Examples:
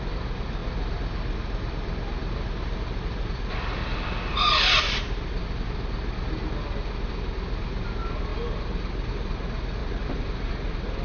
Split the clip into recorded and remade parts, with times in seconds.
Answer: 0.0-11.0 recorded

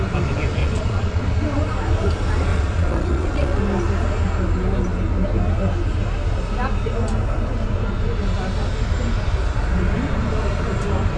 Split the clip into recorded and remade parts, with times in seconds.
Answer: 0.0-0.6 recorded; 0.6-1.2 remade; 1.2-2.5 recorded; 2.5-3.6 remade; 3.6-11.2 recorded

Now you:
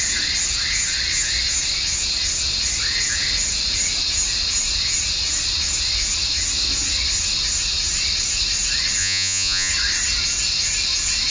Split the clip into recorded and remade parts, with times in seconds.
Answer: 0.0-9.0 recorded; 9.0-9.7 remade; 9.7-11.3 recorded

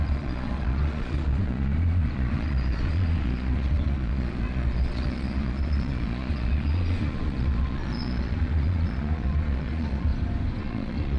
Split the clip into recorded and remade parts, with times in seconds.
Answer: 0.0-10.1 remade; 10.1-10.6 recorded; 10.6-11.2 remade

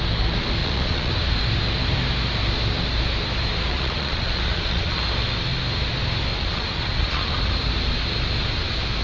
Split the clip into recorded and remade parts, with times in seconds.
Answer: 0.0-0.6 recorded; 0.6-1.1 remade; 1.1-3.7 recorded; 3.7-5.0 remade; 5.0-6.3 recorded; 6.3-7.5 remade; 7.5-9.0 recorded

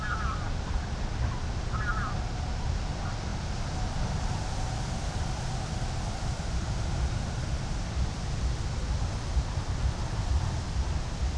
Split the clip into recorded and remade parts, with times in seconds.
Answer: 0.0-11.4 recorded

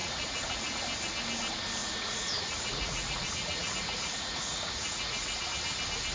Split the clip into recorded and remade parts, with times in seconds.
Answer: 0.0-0.8 remade; 0.8-1.8 recorded; 1.8-5.5 remade; 5.5-6.1 recorded

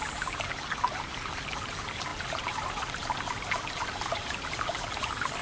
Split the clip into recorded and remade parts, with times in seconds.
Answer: 0.0-5.4 recorded